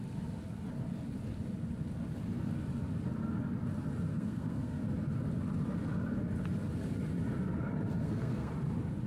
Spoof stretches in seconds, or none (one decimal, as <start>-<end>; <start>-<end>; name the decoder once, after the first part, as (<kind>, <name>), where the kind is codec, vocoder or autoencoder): 4.1-4.8 (codec, SNAC); 8.0-8.5